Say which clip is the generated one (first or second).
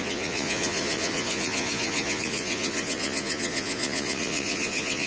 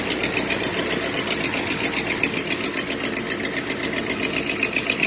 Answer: first